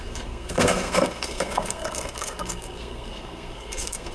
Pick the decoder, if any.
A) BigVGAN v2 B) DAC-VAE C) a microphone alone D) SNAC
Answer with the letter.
D